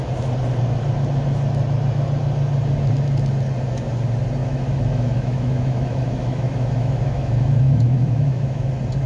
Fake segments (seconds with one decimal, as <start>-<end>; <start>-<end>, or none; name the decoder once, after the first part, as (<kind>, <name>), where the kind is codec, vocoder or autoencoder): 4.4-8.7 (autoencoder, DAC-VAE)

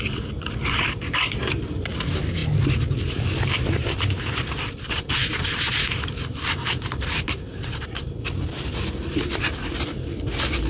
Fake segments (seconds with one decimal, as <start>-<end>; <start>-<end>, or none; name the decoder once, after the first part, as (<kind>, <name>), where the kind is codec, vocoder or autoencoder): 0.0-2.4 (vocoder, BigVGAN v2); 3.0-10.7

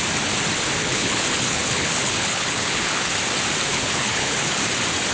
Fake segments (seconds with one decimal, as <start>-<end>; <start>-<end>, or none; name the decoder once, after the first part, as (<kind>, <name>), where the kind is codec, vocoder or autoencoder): 0.8-3.1 (codec, HILCodec); 3.7-4.6